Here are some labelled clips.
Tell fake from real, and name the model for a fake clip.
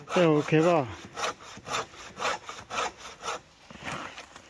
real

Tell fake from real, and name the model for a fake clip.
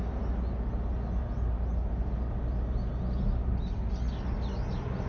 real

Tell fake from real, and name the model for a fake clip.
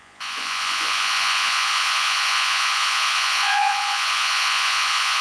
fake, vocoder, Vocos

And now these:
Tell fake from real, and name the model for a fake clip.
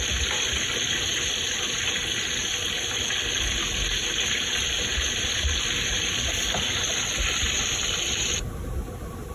real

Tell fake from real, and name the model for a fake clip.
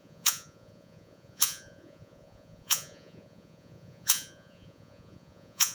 fake, vocoder, Vocos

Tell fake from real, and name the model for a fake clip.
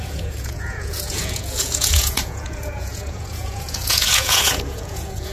fake, vocoder, Vocos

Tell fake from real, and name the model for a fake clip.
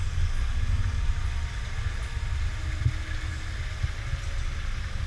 real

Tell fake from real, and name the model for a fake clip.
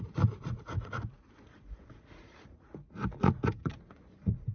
fake, vocoder, Vocos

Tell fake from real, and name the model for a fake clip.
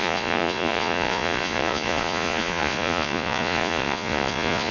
fake, vocoder, Vocos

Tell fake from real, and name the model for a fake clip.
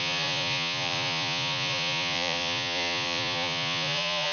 fake, vocoder, Vocos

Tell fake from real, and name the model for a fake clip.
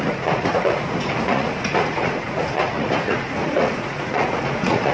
fake, vocoder, Vocos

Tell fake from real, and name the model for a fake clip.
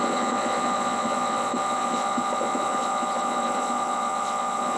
fake, vocoder, Vocos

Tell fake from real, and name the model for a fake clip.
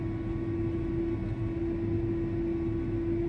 real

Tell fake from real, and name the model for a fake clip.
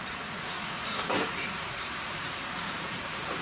fake, vocoder, Vocos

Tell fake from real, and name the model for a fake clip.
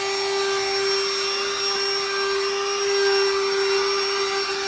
real